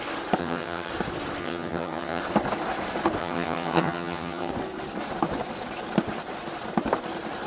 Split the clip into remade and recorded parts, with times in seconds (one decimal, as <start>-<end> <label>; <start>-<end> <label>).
0.0-0.4 recorded; 0.4-0.9 remade; 0.9-1.4 recorded; 1.4-2.2 remade; 2.2-3.2 recorded; 3.2-4.5 remade; 4.5-7.5 recorded

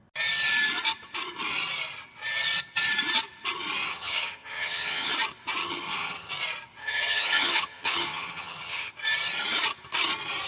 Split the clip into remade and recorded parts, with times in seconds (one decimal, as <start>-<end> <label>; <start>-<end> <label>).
0.0-3.9 recorded; 3.9-5.1 remade; 5.1-5.6 recorded; 5.6-6.3 remade; 6.3-6.8 recorded; 6.8-8.9 remade; 8.9-10.5 recorded

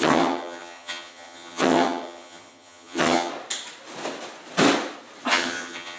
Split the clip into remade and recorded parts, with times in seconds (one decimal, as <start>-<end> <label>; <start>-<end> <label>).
0.0-3.3 remade; 3.3-5.3 recorded; 5.3-6.0 remade

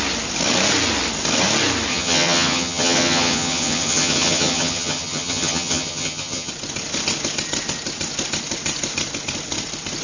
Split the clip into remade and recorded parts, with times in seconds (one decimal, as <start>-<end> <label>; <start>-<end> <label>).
0.0-1.9 recorded; 1.9-6.5 remade; 6.5-10.0 recorded

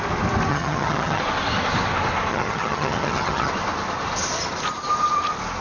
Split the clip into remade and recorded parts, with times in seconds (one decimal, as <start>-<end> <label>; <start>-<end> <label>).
0.0-0.5 recorded; 0.5-1.2 remade; 1.2-2.3 recorded; 2.3-3.5 remade; 3.5-5.6 recorded